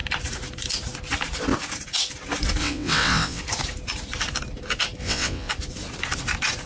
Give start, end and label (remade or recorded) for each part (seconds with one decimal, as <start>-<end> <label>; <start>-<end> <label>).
0.0-2.6 recorded; 2.6-3.4 remade; 3.4-5.0 recorded; 5.0-5.5 remade; 5.5-6.7 recorded